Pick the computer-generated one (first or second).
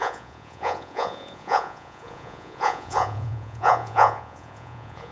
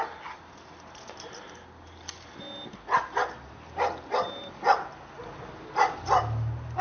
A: first